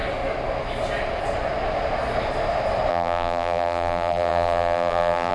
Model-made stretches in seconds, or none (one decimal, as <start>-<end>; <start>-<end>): 2.9-5.3

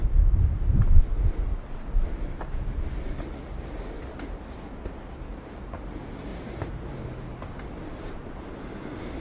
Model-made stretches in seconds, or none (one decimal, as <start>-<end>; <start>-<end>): 6.3-8.1

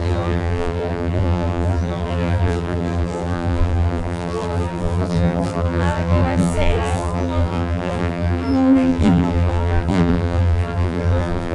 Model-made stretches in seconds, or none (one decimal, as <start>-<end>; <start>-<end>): 0.0-11.5

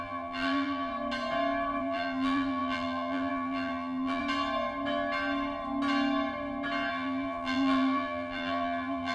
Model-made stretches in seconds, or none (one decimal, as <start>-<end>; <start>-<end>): 0.0-0.9; 1.8-4.2; 6.9-9.1

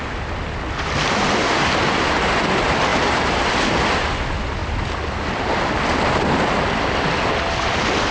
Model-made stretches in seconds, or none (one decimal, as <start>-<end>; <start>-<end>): none

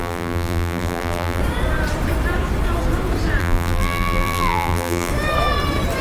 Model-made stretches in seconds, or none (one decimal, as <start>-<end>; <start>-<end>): 0.0-1.4; 3.4-5.1